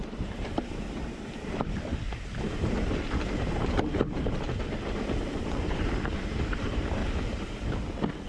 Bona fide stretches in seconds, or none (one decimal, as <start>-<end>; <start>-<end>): 1.9-3.2; 7.0-8.3